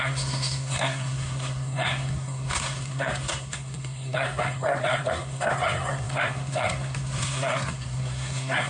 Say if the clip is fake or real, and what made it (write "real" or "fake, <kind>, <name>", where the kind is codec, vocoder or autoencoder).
fake, codec, SNAC